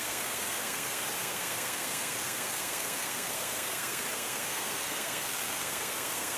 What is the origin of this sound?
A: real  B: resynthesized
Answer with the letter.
B